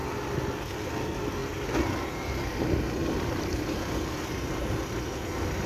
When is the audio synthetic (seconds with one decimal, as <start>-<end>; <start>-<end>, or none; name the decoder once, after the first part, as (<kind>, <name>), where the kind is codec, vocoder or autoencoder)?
none